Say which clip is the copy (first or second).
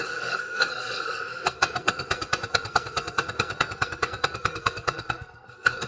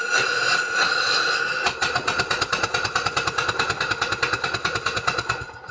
first